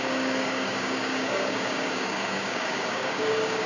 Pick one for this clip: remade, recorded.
remade